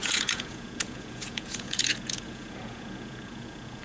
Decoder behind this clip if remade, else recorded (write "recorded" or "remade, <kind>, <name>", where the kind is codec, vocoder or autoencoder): remade, vocoder, Vocos